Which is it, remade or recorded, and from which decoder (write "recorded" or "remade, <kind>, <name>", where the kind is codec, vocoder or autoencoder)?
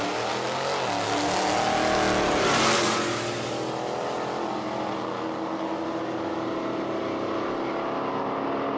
recorded